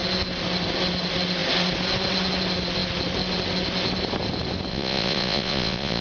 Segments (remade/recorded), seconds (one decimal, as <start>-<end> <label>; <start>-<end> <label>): 0.0-4.7 recorded; 4.7-6.0 remade